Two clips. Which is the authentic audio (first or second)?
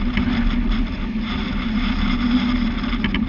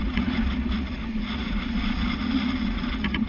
first